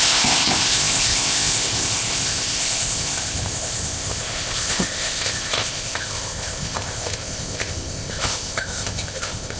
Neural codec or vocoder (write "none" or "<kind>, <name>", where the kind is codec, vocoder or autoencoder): codec, ZipCodec